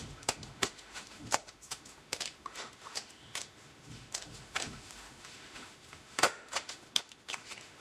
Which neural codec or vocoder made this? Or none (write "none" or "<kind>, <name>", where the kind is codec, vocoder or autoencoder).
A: autoencoder, DAC-VAE